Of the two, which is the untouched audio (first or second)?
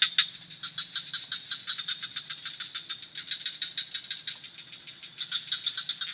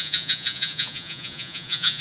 first